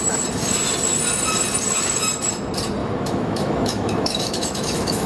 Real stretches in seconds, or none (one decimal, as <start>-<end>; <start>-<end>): 0.0-2.8